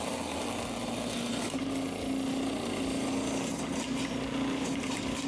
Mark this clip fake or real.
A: real